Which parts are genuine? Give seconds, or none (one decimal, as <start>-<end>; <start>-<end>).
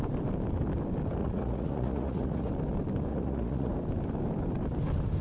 0.0-1.2; 2.5-3.1; 3.7-5.2